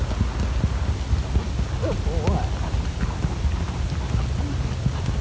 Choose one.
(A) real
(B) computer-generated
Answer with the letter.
A